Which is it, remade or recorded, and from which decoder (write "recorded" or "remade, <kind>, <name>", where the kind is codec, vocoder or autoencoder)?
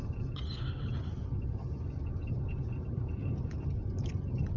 recorded